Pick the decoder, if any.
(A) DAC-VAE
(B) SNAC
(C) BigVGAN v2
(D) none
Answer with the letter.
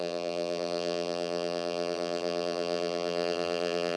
C